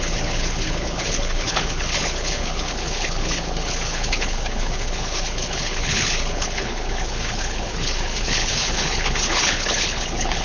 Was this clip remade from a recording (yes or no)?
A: yes